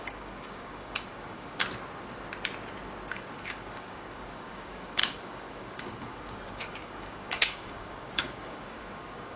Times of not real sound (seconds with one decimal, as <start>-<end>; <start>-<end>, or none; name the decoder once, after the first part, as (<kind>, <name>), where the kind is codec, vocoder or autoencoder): 0.0-1.6 (codec, DAC); 3.1-9.4